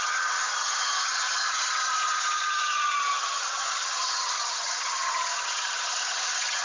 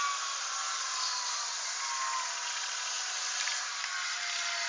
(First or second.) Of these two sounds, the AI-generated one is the first